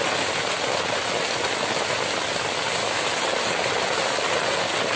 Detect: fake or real real